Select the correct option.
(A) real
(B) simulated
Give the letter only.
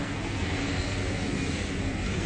B